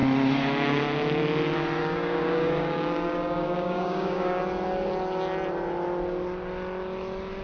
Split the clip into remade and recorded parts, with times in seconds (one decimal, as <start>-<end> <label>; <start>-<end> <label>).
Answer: 0.0-1.8 recorded; 1.8-4.4 remade; 4.4-7.4 recorded